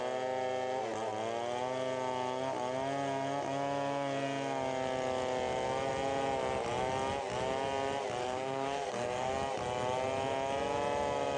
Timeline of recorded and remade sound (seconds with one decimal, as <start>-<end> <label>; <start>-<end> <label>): 0.0-8.2 recorded; 8.2-9.3 remade; 9.3-11.4 recorded

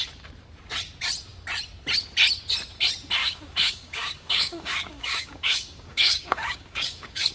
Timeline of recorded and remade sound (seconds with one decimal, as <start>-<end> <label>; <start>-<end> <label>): 0.0-3.2 recorded; 3.2-7.3 remade

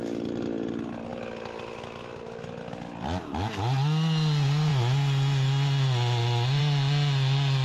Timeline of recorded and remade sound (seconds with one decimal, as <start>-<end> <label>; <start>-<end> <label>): 0.0-7.6 recorded

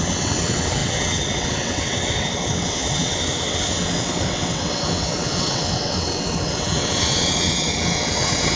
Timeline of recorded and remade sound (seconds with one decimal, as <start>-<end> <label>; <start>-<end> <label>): 0.0-8.6 remade

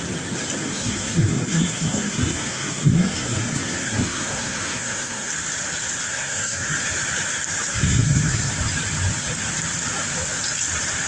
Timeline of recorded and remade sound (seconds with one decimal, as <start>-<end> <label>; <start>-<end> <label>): 0.0-0.6 recorded; 0.6-5.3 remade; 5.3-6.1 recorded; 6.1-6.8 remade; 6.8-7.7 recorded; 7.7-8.5 remade; 8.5-11.1 recorded